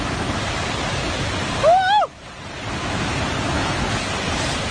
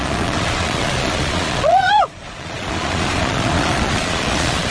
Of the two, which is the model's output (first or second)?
second